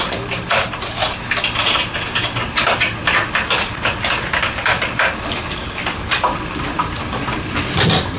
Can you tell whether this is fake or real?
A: real